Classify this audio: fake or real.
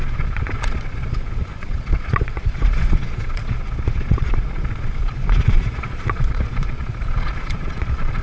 fake